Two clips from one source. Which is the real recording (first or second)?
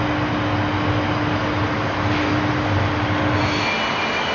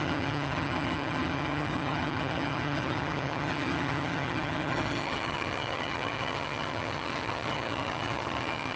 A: first